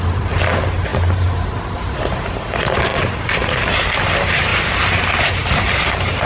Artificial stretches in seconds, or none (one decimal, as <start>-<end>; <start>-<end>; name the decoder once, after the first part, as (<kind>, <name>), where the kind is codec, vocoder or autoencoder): 0.0-4.5 (vocoder, BigVGAN v2); 5.4-6.3